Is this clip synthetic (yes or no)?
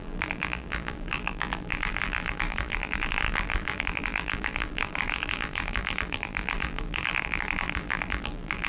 yes